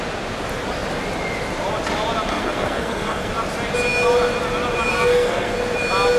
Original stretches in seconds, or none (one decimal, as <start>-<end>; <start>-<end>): 0.0-2.3; 3.3-4.9; 5.6-6.2